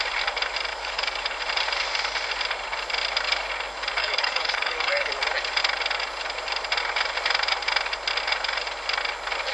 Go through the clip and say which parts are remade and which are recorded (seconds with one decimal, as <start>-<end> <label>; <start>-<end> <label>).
0.0-0.7 recorded; 0.7-1.2 remade; 1.2-4.0 recorded; 4.0-5.1 remade; 5.1-9.5 recorded